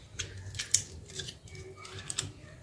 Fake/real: real